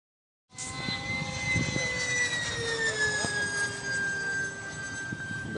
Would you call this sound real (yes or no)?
yes